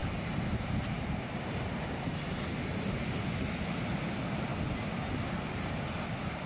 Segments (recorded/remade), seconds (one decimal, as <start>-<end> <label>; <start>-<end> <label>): 0.0-2.6 remade; 2.6-6.5 recorded